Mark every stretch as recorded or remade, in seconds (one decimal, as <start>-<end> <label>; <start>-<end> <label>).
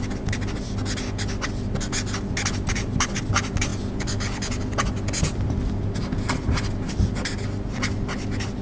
0.0-8.6 recorded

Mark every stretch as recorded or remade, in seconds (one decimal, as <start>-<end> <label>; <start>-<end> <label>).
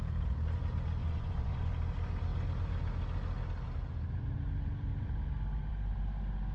0.0-1.0 recorded; 1.0-1.7 remade; 1.7-6.5 recorded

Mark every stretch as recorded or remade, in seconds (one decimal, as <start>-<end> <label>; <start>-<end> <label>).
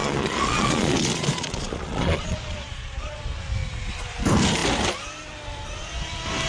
0.0-3.2 remade; 3.2-6.5 recorded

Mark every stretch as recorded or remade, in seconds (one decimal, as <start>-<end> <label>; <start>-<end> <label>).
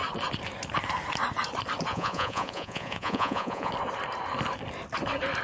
0.0-1.9 recorded; 1.9-3.7 remade; 3.7-5.4 recorded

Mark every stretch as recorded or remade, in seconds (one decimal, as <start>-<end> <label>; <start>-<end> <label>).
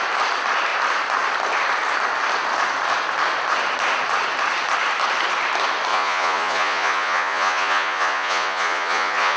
0.0-5.9 recorded; 5.9-9.4 remade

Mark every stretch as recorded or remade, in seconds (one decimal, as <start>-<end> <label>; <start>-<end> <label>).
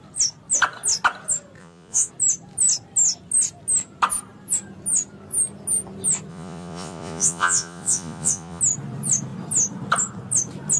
0.0-1.6 recorded; 1.6-2.1 remade; 2.1-6.3 recorded; 6.3-8.6 remade; 8.6-10.8 recorded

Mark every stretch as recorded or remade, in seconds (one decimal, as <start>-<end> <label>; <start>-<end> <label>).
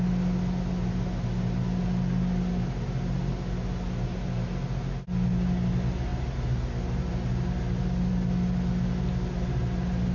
0.0-10.1 recorded